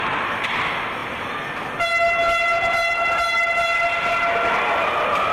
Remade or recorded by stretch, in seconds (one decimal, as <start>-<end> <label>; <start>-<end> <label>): 0.0-5.3 recorded